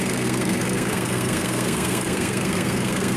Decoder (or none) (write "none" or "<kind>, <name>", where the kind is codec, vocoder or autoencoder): codec, SNAC